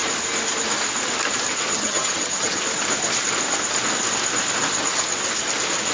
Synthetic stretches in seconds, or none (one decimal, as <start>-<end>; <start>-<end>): 1.7-2.6